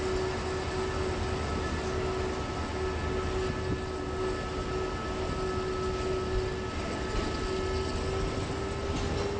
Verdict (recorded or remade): recorded